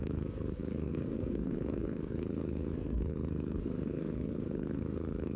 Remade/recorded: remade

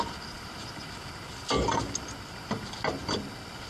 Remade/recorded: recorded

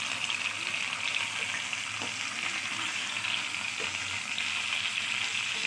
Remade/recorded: recorded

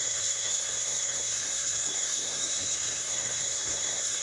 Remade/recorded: remade